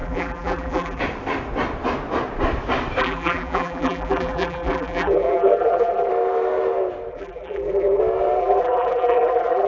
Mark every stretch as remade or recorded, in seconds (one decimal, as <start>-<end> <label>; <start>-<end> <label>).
0.0-1.0 remade; 1.0-3.0 recorded; 3.0-6.1 remade; 6.1-7.1 recorded; 7.1-8.0 remade; 8.0-8.4 recorded; 8.4-9.7 remade